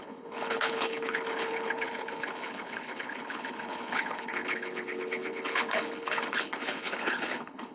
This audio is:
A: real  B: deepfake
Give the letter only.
B